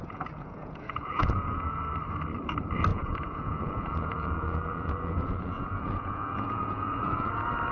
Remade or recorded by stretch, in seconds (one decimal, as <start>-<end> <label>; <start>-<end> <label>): 0.0-1.8 remade; 1.8-2.9 recorded; 2.9-7.3 remade; 7.3-7.7 recorded